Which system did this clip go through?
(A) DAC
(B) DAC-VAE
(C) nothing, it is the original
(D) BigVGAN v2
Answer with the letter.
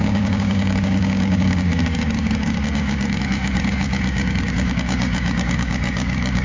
A